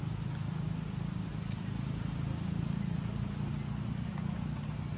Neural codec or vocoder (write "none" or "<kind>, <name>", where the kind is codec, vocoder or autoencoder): none